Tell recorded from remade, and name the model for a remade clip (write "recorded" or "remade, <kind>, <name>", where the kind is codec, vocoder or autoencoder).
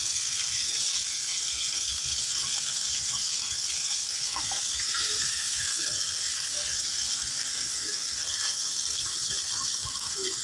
remade, codec, SNAC